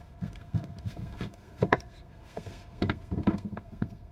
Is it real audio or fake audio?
fake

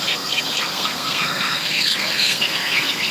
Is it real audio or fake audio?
fake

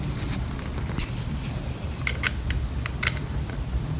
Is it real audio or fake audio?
real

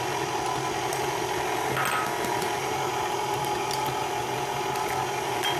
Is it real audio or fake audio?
real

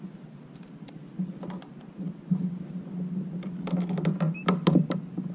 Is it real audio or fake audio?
real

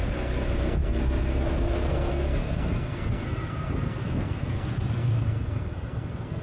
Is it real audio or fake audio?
fake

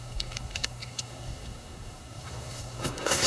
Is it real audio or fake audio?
fake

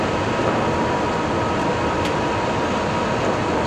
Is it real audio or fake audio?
real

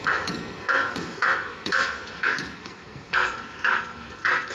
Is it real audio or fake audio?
fake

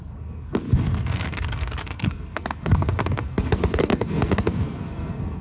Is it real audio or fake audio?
fake